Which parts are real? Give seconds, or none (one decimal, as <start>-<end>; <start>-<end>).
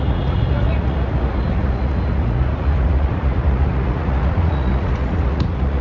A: none